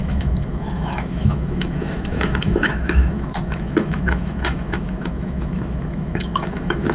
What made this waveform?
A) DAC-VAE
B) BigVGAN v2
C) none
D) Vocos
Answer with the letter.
A